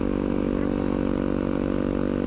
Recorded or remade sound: recorded